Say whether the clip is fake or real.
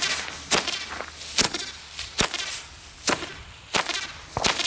real